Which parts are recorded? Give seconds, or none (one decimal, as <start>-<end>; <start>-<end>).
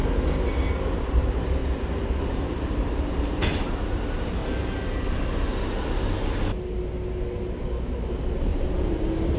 0.0-1.1; 1.6-2.2; 4.4-8.1